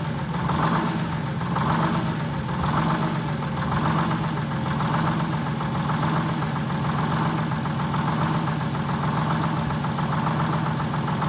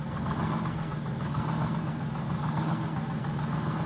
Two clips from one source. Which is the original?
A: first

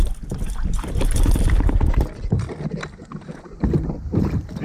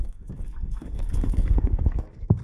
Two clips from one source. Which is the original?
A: first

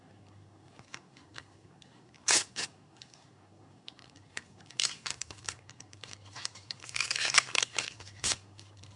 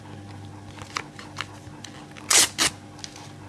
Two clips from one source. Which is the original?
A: second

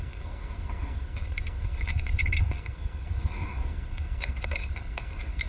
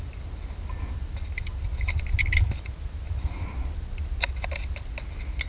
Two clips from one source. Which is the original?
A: second